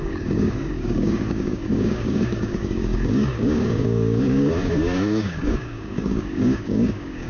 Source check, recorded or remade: remade